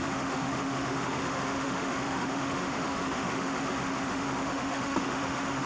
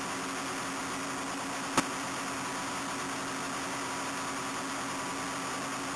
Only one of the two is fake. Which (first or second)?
first